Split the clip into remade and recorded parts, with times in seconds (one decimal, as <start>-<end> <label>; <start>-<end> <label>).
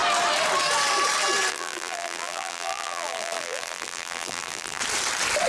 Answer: 0.0-1.5 recorded; 1.5-4.8 remade; 4.8-5.5 recorded